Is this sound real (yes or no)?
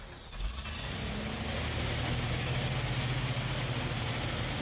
yes